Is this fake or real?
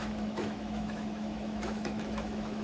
fake